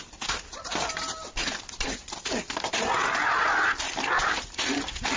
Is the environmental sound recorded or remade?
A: recorded